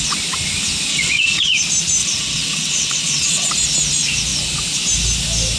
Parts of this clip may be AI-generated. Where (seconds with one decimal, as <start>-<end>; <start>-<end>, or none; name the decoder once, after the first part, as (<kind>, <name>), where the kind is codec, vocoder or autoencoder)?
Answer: 0.9-1.5 (vocoder, WaveNeXt); 2.0-3.5